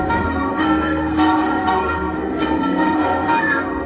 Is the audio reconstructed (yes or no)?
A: yes